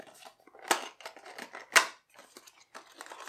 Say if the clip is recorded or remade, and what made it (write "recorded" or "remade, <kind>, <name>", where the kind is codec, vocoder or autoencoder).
recorded